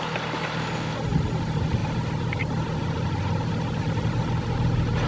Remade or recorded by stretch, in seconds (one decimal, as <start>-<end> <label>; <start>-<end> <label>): 0.0-5.1 recorded